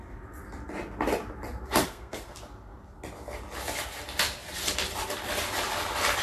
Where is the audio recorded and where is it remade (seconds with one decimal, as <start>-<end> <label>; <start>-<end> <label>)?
0.0-1.8 recorded; 1.8-2.4 remade; 2.4-6.2 recorded